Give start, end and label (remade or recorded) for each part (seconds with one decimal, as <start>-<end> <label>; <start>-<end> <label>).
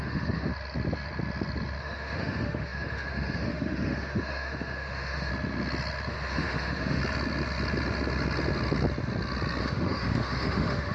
0.0-0.5 remade; 0.5-1.8 recorded; 1.8-5.3 remade; 5.3-6.1 recorded; 6.1-7.0 remade; 7.0-9.6 recorded; 9.6-10.9 remade